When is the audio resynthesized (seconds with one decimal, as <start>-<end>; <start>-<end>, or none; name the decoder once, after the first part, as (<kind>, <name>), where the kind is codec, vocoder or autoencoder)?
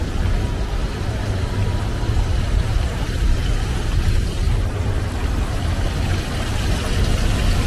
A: 0.8-5.1 (vocoder, BigVGAN v2)